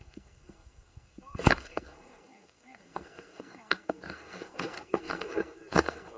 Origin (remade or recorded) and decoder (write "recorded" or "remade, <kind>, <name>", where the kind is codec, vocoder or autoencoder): remade, codec, SNAC